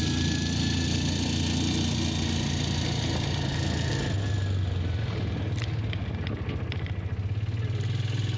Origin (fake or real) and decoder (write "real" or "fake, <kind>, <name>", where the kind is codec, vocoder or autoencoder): real